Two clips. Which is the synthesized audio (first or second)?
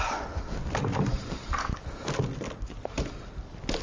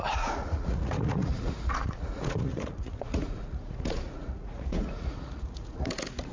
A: second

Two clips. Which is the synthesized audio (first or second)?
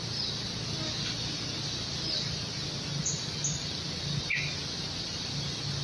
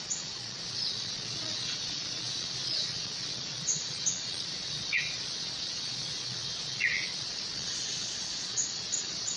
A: second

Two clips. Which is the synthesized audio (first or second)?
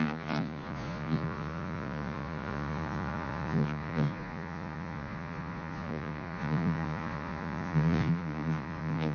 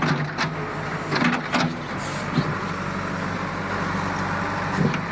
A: first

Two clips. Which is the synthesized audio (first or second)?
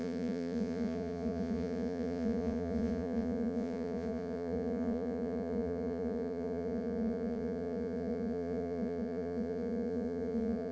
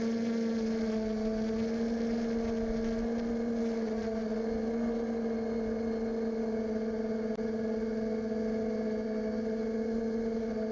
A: first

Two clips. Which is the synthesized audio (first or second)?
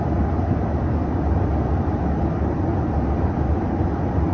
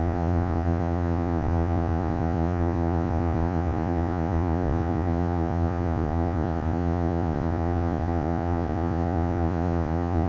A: second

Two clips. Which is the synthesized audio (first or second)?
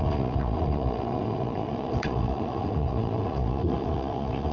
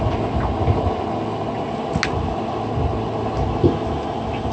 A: first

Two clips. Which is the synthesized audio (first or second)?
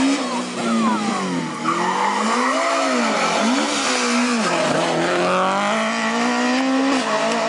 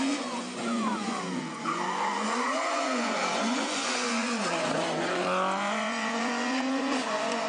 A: second